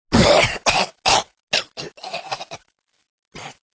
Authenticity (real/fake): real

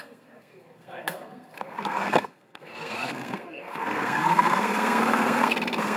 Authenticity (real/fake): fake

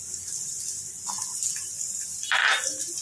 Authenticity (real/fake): real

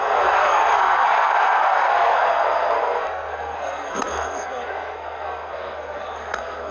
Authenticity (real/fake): fake